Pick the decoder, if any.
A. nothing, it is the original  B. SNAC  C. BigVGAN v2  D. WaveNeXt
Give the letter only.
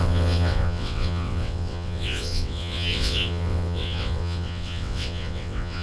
D